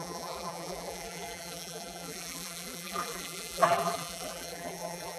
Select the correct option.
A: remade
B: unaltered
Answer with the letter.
A